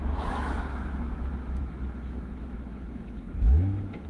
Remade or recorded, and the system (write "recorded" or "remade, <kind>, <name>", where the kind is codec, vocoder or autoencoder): remade, autoencoder, DAC-VAE